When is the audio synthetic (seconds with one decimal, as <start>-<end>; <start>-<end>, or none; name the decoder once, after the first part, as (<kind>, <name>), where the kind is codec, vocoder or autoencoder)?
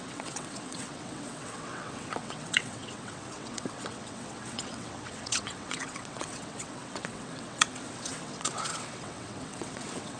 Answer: 0.0-10.2 (vocoder, WaveNeXt)